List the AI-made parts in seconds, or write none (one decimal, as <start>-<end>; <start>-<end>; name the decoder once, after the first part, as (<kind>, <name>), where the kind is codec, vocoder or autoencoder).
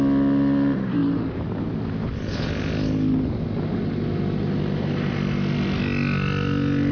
none